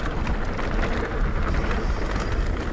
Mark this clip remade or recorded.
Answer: recorded